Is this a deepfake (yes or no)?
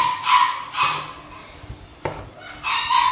no